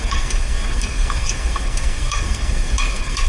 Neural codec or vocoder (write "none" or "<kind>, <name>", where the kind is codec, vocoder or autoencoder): codec, SNAC